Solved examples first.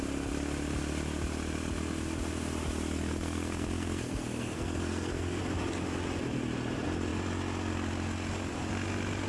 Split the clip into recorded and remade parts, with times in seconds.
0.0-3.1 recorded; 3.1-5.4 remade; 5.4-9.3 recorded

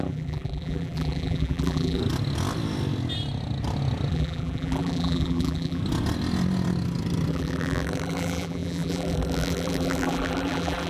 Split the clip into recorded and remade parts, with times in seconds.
0.0-2.0 remade; 2.0-4.1 recorded; 4.1-5.8 remade; 5.8-7.3 recorded; 7.3-10.9 remade